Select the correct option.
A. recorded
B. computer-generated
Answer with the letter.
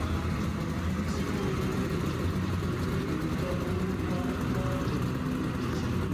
A